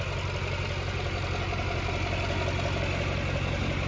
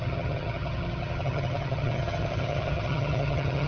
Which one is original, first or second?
first